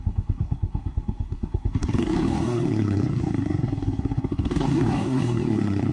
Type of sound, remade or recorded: remade